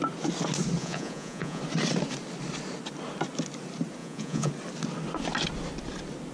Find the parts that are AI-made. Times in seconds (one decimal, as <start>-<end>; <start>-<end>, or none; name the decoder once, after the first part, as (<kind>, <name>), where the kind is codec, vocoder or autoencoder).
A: 0.8-1.6 (vocoder, Vocos); 4.0-4.5